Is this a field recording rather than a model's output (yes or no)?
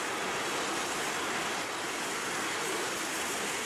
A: yes